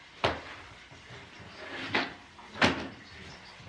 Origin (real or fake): real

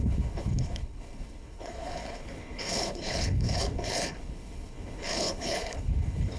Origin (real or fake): fake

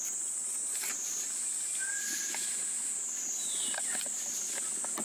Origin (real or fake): real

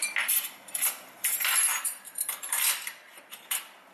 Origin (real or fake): fake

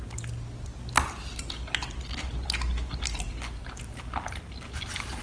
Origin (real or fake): real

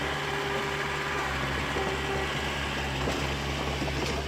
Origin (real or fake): real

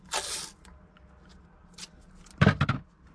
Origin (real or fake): real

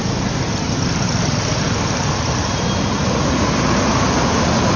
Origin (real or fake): real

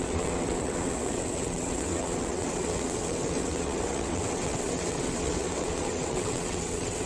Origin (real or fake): fake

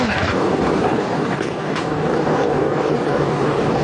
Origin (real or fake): fake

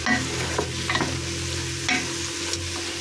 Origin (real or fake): real